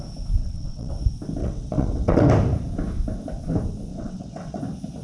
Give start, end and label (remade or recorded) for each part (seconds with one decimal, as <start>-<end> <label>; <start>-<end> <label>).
0.0-0.4 recorded; 0.4-0.9 remade; 0.9-1.4 recorded; 1.4-2.2 remade; 2.2-3.9 recorded; 3.9-4.6 remade; 4.6-5.0 recorded